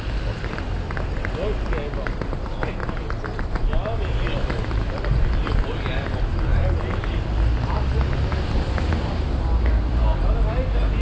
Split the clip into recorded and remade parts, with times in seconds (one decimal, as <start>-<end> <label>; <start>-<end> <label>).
0.0-11.0 recorded